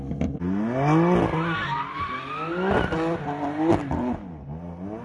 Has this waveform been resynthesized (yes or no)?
no